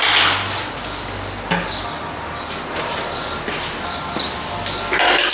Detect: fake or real real